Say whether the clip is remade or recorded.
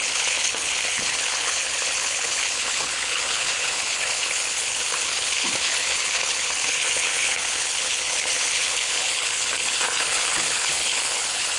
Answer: remade